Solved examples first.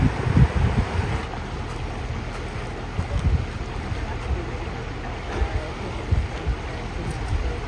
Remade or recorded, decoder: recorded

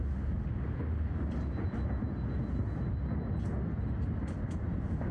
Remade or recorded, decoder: recorded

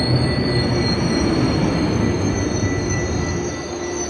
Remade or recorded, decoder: recorded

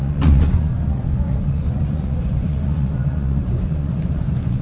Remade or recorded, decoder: remade, vocoder, Vocos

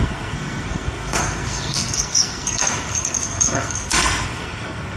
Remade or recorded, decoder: remade, codec, SNAC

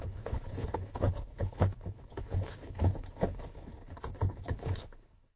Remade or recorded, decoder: remade, codec, HILCodec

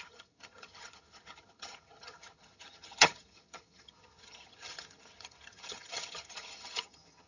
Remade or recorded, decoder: remade, vocoder, HiFi-GAN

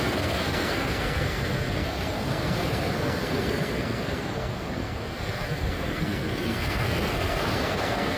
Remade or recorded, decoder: remade, codec, SNAC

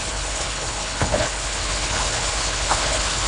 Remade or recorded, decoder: remade, codec, HILCodec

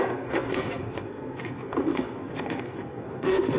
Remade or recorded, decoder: remade, codec, SNAC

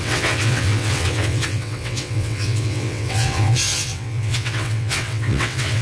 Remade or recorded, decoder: remade, vocoder, WaveNeXt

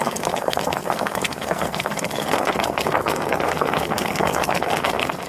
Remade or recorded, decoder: remade, codec, SNAC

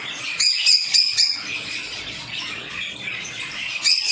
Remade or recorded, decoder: remade, vocoder, Vocos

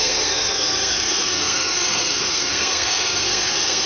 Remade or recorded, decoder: remade, codec, SNAC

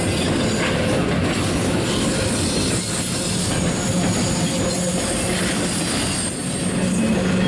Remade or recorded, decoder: recorded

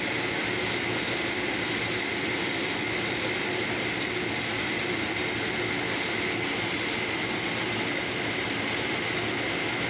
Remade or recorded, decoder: recorded